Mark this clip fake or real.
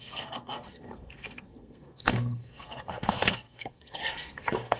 fake